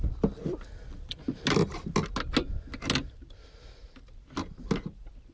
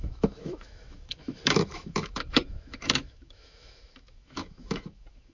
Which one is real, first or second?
first